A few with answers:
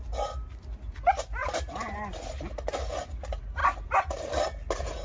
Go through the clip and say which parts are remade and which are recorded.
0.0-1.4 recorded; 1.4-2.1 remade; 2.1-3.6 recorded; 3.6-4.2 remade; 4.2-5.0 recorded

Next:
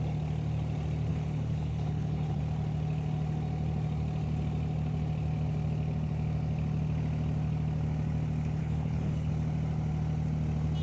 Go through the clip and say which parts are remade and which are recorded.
0.0-1.1 recorded; 1.1-2.4 remade; 2.4-8.6 recorded; 8.6-9.3 remade; 9.3-10.8 recorded

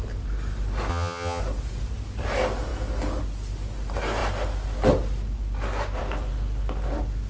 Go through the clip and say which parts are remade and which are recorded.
0.0-0.9 recorded; 0.9-1.4 remade; 1.4-7.3 recorded

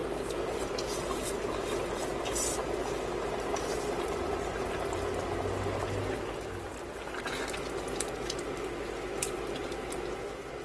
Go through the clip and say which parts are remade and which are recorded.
0.0-10.6 recorded

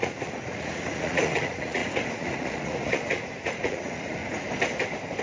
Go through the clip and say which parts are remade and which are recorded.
0.0-4.2 remade; 4.2-5.2 recorded

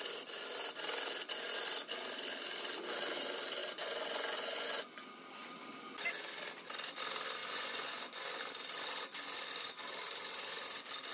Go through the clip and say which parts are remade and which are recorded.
0.0-3.6 recorded; 3.6-5.1 remade; 5.1-7.4 recorded; 7.4-8.4 remade; 8.4-11.1 recorded

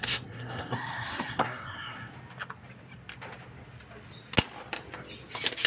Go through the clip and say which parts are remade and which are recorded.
0.0-2.1 remade; 2.1-5.7 recorded

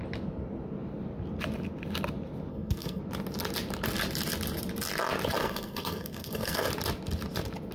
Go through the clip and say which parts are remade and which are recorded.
0.0-2.5 recorded; 2.5-3.0 remade; 3.0-5.4 recorded; 5.4-6.7 remade; 6.7-7.7 recorded